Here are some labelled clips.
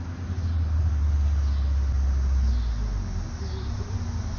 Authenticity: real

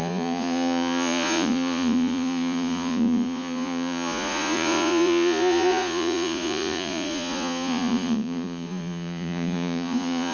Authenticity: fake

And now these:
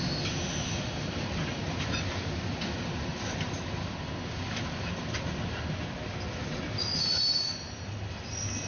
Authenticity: real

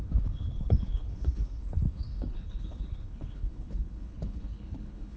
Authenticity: fake